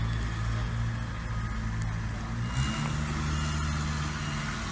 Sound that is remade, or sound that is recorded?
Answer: recorded